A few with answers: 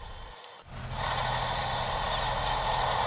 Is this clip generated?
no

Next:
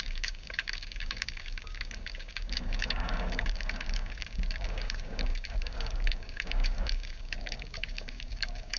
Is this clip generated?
yes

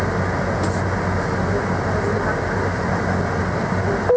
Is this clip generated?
no